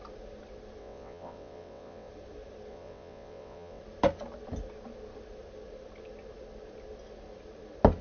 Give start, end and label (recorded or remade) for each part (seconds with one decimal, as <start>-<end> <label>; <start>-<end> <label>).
0.0-0.8 recorded; 0.8-2.1 remade; 2.1-2.7 recorded; 2.7-3.8 remade; 3.8-8.0 recorded